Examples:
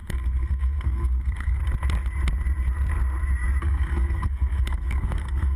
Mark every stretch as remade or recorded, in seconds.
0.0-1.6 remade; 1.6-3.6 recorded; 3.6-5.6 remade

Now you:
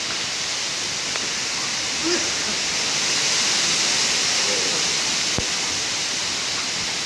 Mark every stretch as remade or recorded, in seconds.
0.0-7.1 recorded

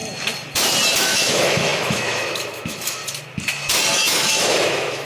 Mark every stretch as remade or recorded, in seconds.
0.0-1.0 recorded; 1.0-3.0 remade; 3.0-3.9 recorded; 3.9-5.0 remade

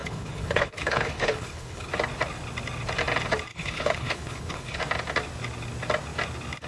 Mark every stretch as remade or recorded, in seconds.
0.0-1.9 remade; 1.9-3.5 recorded; 3.5-4.8 remade; 4.8-6.7 recorded

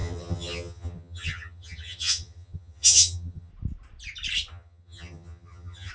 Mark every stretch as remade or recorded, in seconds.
0.0-3.5 remade; 3.5-4.5 recorded; 4.5-5.9 remade

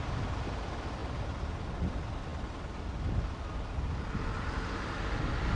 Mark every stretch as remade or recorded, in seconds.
0.0-5.6 recorded